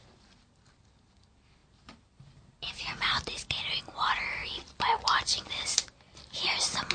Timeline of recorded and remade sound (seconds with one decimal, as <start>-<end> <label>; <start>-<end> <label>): 0.0-1.6 recorded; 1.6-3.8 remade; 3.8-6.9 recorded